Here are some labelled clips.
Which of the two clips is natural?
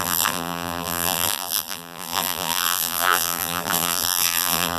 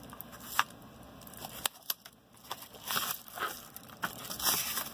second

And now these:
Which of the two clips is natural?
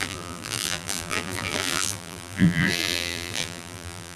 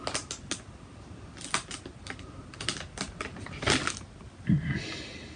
second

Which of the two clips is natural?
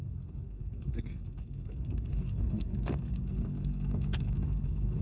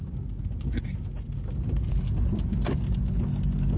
second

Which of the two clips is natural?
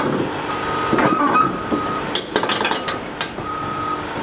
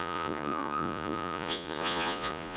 first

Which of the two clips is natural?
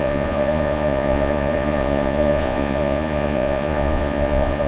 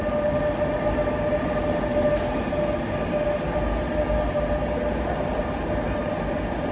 second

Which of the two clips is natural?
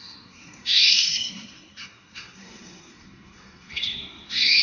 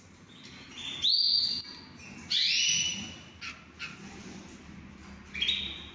second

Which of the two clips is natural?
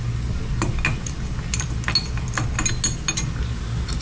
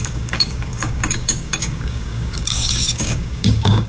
first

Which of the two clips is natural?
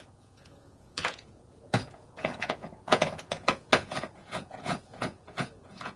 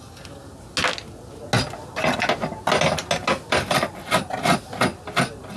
second